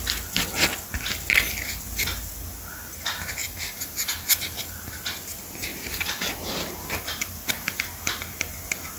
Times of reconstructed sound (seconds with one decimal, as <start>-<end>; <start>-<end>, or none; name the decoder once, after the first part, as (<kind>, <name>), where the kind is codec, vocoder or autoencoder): 3.4-4.9 (vocoder, BigVGAN v2); 5.7-8.5